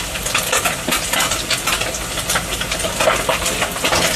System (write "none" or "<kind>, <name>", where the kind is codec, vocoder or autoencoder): none